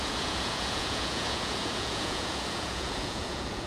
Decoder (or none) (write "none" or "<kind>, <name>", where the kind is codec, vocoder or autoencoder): vocoder, Vocos